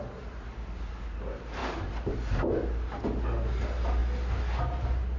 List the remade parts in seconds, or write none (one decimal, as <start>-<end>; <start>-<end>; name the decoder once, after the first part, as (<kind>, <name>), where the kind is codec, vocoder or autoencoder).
none

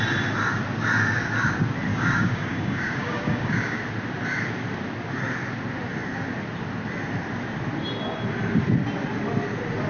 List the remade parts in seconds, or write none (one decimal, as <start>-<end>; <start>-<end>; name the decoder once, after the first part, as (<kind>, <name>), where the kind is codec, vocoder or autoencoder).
1.9-3.8 (codec, DAC)

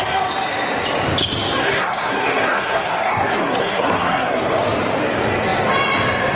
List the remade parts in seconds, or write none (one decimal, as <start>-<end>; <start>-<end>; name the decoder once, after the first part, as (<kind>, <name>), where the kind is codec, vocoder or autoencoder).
1.6-4.4 (codec, SNAC)

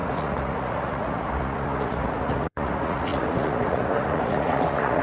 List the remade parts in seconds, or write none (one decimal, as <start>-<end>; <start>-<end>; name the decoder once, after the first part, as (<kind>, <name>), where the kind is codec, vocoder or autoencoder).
0.0-5.0 (vocoder, Vocos)

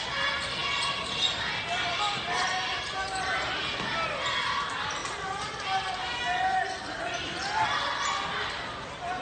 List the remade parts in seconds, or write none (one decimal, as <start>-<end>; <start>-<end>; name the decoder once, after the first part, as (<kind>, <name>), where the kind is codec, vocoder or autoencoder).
none

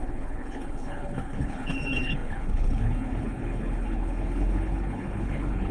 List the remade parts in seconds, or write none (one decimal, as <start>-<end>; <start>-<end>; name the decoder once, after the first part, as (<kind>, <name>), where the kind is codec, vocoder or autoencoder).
0.0-5.7 (codec, HILCodec)

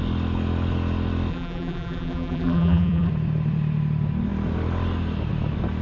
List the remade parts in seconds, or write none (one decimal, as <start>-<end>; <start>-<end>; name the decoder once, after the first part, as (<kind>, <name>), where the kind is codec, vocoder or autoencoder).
1.3-3.1 (vocoder, BigVGAN v2)